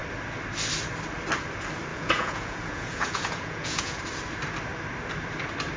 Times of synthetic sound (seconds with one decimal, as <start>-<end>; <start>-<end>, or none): 1.9-4.0